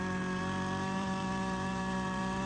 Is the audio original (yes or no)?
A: no